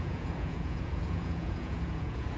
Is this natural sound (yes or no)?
no